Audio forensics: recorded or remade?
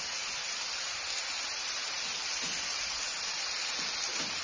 recorded